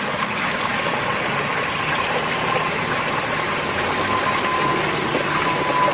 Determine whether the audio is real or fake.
real